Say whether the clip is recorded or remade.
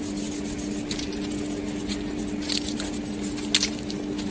recorded